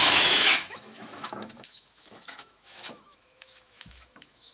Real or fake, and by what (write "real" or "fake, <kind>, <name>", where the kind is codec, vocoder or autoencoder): fake, autoencoder, DAC-VAE